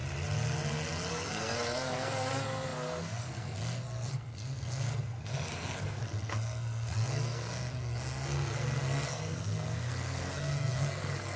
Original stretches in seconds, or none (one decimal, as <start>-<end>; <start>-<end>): 0.0-1.1